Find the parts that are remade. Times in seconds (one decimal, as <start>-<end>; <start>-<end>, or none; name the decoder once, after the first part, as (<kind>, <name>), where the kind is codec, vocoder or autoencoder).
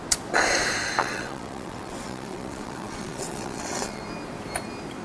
1.0-4.0 (vocoder, WaveNeXt)